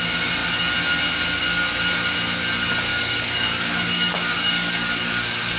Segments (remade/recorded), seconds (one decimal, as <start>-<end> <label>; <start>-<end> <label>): 0.0-2.9 recorded; 2.9-5.6 remade

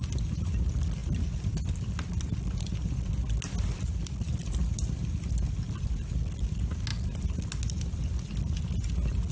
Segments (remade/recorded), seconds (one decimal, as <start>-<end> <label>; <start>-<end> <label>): 0.0-9.3 recorded

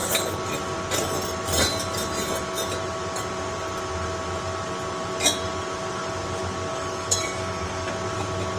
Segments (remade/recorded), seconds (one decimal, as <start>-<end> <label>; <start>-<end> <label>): 0.0-6.7 recorded; 6.7-7.9 remade; 7.9-8.6 recorded

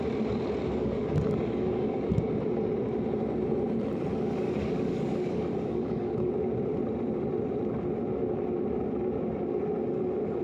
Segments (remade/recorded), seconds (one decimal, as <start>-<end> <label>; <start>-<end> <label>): 0.0-0.8 recorded; 0.8-2.3 remade; 2.3-4.1 recorded; 4.1-6.3 remade; 6.3-10.4 recorded

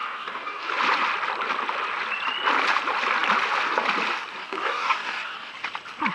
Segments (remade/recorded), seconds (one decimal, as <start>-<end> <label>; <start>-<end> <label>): 0.0-0.7 remade; 0.7-4.4 recorded; 4.4-5.5 remade; 5.5-6.1 recorded

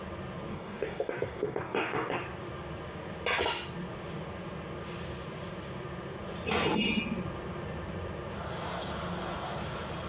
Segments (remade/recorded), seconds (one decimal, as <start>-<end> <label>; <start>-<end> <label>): 0.0-0.5 recorded; 0.5-2.2 remade; 2.2-10.1 recorded